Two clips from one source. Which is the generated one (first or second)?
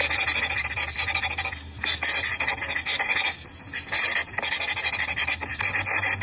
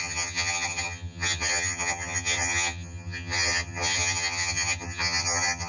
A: second